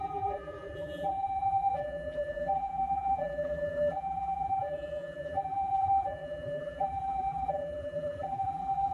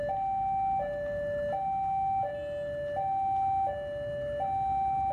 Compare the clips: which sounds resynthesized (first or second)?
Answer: first